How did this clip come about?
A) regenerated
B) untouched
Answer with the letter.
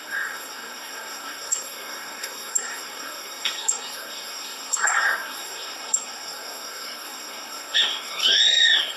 A